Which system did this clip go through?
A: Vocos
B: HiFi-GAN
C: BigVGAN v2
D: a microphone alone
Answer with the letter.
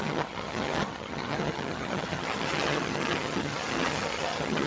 B